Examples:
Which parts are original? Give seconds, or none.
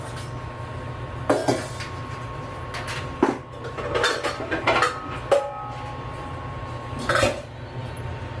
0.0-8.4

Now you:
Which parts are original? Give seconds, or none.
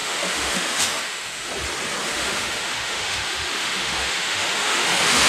1.5-2.0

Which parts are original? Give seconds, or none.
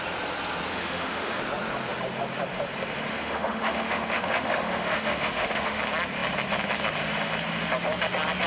0.0-0.7; 1.4-3.1; 5.8-8.5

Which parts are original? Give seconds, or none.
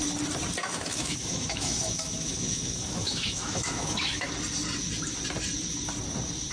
0.0-0.6; 4.3-6.5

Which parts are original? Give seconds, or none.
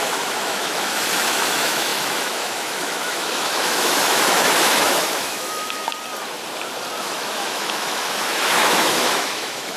5.8-7.0